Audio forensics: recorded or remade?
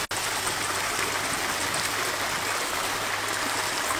recorded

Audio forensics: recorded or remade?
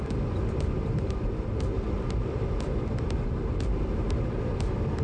recorded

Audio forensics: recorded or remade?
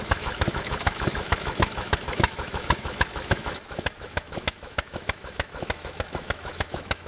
remade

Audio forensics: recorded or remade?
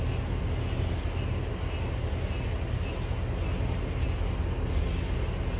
recorded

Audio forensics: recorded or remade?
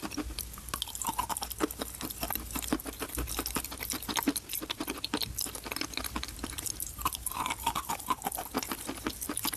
recorded